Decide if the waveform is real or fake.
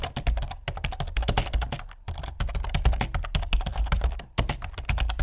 real